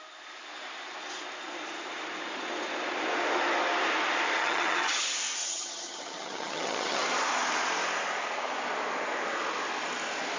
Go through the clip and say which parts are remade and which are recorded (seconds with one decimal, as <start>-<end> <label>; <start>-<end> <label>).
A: 0.0-4.4 recorded; 4.4-5.0 remade; 5.0-5.4 recorded; 5.4-7.0 remade; 7.0-10.4 recorded